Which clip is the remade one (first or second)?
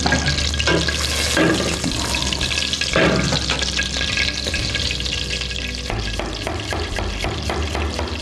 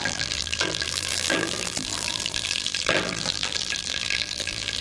second